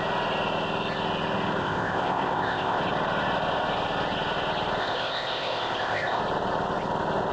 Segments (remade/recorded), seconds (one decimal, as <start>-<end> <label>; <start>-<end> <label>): 0.0-1.6 recorded; 1.6-2.8 remade; 2.8-4.8 recorded; 4.8-6.2 remade; 6.2-7.3 recorded